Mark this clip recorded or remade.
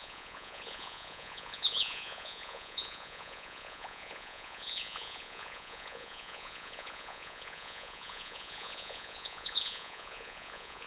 remade